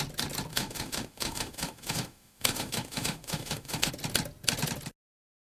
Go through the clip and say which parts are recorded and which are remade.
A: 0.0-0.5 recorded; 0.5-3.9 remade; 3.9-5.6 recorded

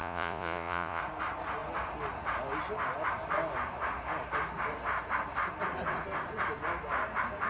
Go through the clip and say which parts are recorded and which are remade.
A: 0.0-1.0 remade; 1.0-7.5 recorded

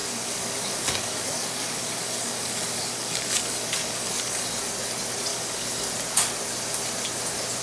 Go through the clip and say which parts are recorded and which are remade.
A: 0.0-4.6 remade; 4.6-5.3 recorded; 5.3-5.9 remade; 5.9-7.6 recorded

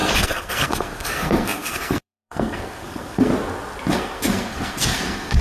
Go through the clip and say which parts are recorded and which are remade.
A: 0.0-3.3 remade; 3.3-3.9 recorded; 3.9-5.4 remade

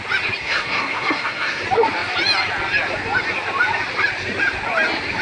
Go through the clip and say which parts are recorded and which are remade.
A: 0.0-0.4 recorded; 0.4-1.6 remade; 1.6-5.2 recorded